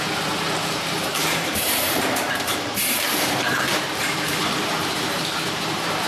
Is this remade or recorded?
remade